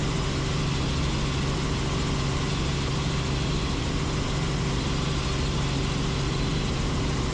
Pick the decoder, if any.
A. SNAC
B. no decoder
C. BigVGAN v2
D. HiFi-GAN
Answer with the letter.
B